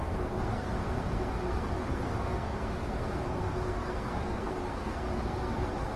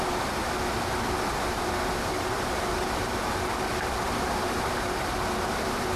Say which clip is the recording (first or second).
second